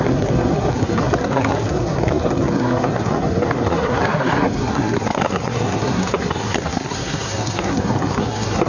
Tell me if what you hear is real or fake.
fake